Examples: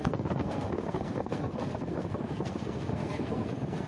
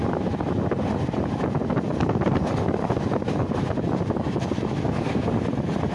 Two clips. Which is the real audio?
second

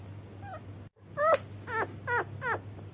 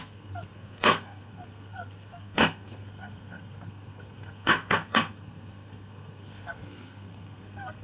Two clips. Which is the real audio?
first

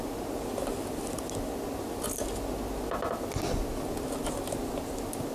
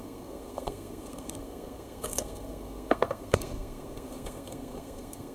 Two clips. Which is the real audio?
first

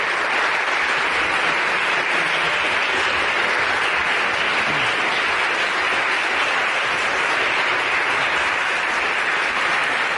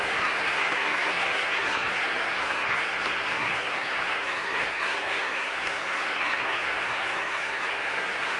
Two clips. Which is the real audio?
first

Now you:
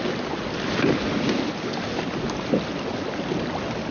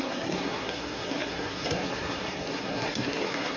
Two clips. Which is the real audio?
first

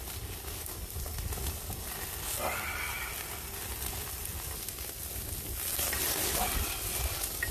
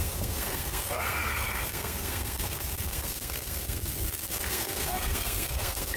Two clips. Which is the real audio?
first